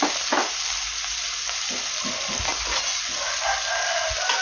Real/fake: real